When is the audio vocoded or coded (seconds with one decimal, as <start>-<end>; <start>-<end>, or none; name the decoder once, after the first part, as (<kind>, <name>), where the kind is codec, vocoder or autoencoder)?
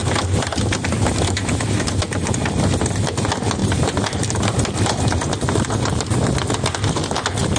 3.6-4.2 (vocoder, BigVGAN v2)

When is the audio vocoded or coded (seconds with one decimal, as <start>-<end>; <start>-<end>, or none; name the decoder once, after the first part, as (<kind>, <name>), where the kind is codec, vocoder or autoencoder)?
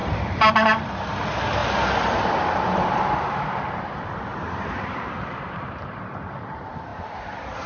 0.0-0.5 (vocoder, BigVGAN v2); 4.3-6.4; 6.9-7.7